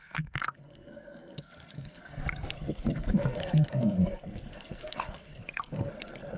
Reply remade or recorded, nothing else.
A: remade